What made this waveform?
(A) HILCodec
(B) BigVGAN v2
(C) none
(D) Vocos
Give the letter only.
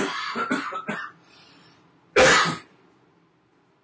C